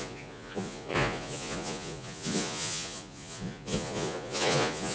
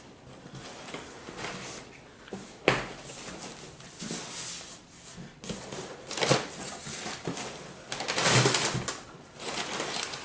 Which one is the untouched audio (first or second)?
second